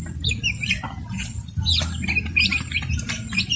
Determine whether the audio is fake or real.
real